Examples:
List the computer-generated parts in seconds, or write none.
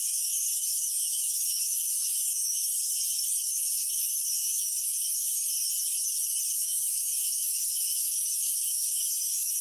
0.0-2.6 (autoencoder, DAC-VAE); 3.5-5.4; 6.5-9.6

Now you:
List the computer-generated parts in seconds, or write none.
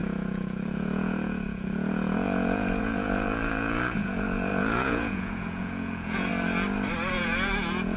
0.0-6.3 (vocoder, Vocos); 7.1-8.0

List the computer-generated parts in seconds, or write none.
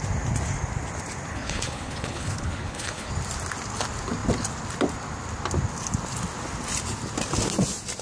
1.3-3.1 (codec, HILCodec)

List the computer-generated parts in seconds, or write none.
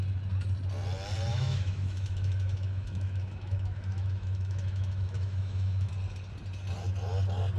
1.3-5.9 (autoencoder, DAC-VAE)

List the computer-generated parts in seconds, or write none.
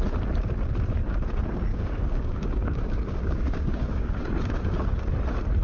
1.7-5.1 (codec, DAC)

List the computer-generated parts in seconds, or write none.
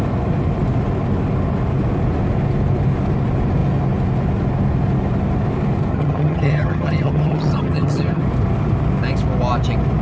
5.9-8.2 (vocoder, HiFi-GAN)